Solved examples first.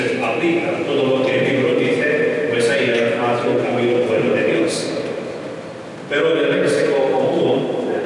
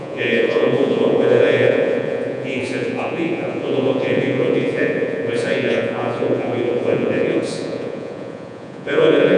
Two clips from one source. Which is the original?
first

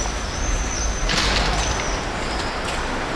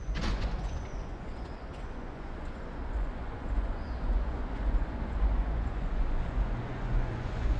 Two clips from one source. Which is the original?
first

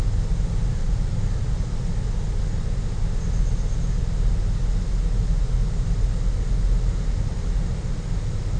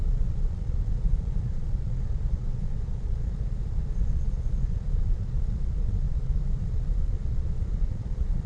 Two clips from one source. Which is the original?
first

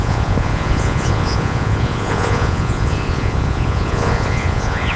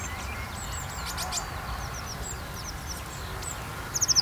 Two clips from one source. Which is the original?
second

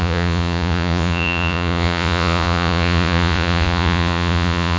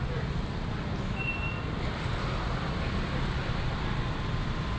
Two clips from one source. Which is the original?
second